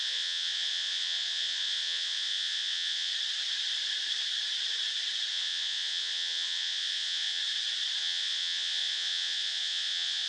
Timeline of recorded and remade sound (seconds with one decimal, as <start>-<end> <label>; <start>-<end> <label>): 0.0-3.1 remade; 3.1-5.3 recorded; 5.3-7.4 remade; 7.4-8.0 recorded; 8.0-10.3 remade